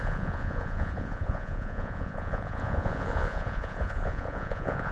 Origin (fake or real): fake